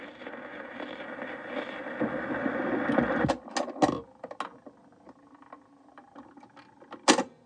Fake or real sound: real